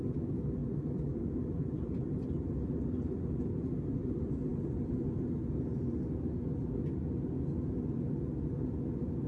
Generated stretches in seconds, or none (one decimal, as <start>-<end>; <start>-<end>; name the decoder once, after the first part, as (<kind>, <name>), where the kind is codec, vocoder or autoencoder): none